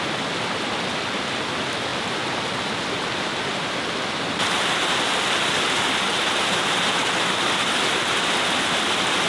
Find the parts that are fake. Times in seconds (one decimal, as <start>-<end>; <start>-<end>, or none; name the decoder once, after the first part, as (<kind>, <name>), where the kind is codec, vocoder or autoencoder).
none

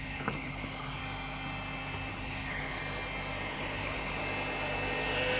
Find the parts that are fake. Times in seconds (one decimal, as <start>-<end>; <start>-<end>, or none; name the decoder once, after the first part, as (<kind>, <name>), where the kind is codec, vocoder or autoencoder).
0.0-1.0 (codec, HILCodec); 2.1-2.8; 3.5-4.2

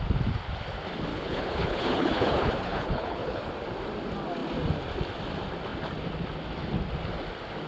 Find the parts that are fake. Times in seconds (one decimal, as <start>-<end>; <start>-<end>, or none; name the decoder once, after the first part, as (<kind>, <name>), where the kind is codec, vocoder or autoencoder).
1.1-3.5 (codec, HILCodec)